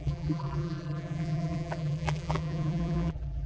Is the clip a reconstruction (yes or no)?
yes